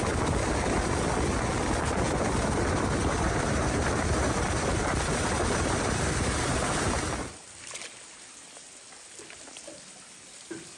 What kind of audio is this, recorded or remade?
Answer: recorded